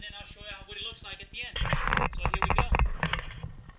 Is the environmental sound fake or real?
real